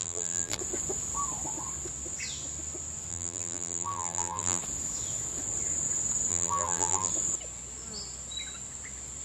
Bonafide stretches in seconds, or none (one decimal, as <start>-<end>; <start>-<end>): 0.6-3.1; 4.6-6.3; 7.1-9.2

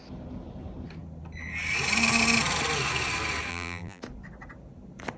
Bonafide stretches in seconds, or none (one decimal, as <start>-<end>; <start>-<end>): 0.0-3.5; 4.0-5.2

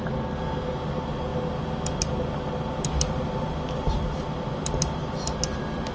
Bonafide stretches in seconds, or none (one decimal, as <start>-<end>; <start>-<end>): 0.0-5.9

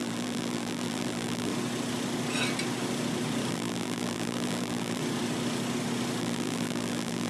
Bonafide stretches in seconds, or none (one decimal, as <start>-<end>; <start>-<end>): 1.5-3.5; 5.0-6.2

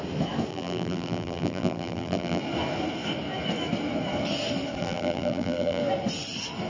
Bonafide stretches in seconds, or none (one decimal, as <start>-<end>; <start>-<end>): 0.0-0.5; 2.4-4.8; 5.8-6.7

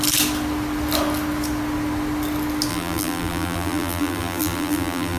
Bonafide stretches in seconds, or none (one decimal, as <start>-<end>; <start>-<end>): 0.0-2.7

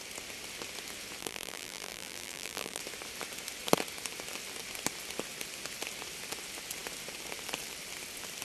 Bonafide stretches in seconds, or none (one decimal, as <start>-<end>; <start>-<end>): 0.0-1.2; 2.8-8.4

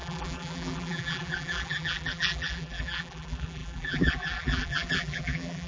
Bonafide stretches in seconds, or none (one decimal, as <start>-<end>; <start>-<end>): none